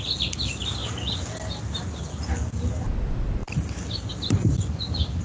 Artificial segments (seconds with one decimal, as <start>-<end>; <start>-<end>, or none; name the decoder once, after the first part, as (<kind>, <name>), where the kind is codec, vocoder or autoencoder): none